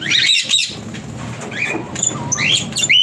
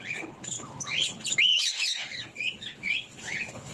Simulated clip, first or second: second